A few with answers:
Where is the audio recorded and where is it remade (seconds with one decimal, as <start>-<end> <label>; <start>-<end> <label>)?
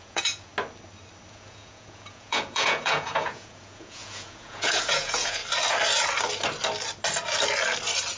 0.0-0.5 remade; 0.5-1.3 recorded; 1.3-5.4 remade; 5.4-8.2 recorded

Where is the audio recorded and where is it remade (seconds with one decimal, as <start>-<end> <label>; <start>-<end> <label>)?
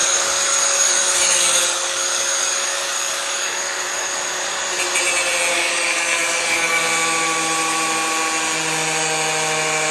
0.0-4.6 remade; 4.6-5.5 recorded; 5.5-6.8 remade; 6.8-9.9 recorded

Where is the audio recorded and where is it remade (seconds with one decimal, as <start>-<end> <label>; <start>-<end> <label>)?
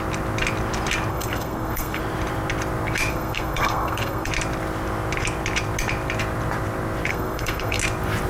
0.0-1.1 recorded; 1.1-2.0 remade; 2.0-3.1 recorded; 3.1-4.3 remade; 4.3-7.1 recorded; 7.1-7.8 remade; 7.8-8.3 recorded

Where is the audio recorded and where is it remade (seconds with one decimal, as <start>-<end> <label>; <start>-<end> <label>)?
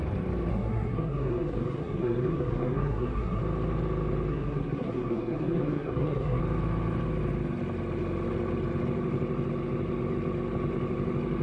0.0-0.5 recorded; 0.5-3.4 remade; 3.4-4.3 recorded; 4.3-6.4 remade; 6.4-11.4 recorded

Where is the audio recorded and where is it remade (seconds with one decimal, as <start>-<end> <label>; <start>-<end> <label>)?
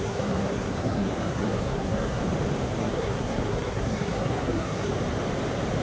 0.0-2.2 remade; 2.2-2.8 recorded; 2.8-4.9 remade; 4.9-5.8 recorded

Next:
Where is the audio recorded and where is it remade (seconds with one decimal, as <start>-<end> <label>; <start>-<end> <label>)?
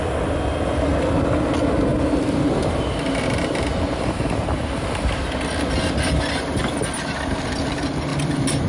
0.0-1.9 recorded; 1.9-5.4 remade; 5.4-8.7 recorded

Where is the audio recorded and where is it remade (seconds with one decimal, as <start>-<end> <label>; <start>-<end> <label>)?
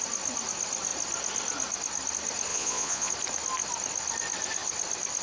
0.0-2.5 recorded; 2.5-3.1 remade; 3.1-5.2 recorded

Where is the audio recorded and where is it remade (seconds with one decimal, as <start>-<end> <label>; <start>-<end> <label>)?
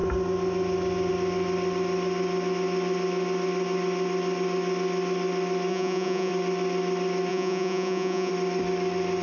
0.0-5.7 recorded; 5.7-6.3 remade; 6.3-7.3 recorded; 7.3-8.3 remade; 8.3-9.2 recorded